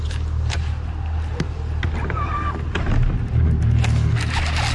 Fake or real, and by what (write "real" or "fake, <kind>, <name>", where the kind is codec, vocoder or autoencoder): real